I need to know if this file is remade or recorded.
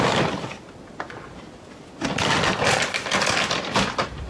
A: recorded